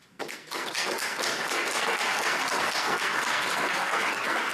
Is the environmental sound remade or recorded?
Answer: remade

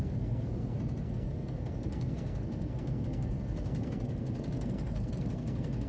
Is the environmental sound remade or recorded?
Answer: remade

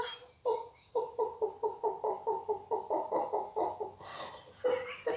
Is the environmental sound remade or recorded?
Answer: recorded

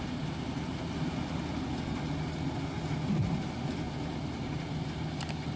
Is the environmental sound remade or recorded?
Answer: recorded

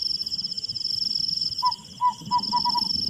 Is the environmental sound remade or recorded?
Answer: recorded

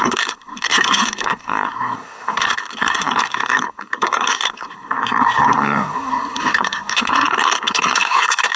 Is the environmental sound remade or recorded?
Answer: remade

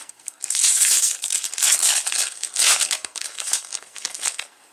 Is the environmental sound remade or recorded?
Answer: remade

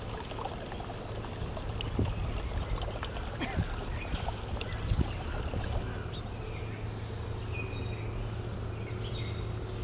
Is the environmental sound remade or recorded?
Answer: recorded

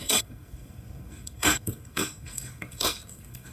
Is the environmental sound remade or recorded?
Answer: remade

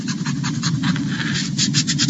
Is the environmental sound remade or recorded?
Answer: recorded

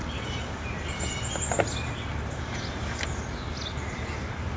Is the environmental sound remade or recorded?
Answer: recorded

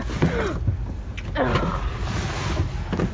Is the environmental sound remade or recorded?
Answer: recorded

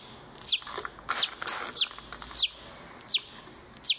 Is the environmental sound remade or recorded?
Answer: recorded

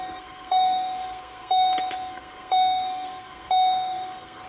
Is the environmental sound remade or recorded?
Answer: remade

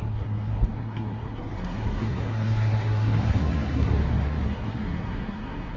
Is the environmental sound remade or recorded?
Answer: remade